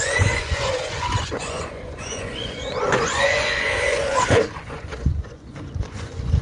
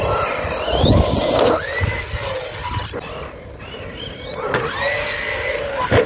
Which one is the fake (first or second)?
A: first